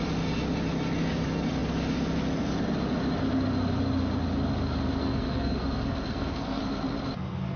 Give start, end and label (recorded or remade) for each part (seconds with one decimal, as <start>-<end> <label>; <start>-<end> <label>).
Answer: 0.0-5.0 recorded; 5.0-6.6 remade; 6.6-7.6 recorded